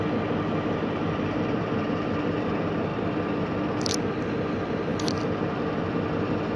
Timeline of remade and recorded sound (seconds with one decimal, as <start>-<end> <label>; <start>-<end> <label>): 0.0-2.9 remade; 2.9-3.7 recorded; 3.7-6.6 remade